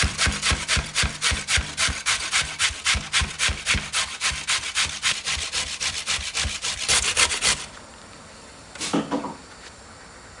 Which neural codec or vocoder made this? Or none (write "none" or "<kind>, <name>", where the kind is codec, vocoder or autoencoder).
vocoder, BigVGAN v2